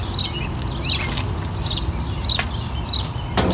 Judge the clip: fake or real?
real